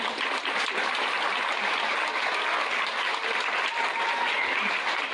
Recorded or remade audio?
recorded